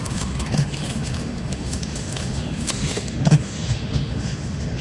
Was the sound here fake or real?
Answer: fake